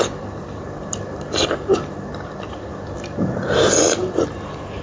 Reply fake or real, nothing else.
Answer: real